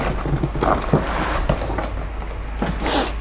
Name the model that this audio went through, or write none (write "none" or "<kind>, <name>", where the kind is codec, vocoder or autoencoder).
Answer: none